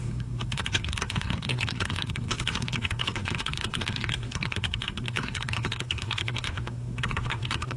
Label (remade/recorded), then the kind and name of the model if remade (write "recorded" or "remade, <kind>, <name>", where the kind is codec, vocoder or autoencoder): remade, codec, SNAC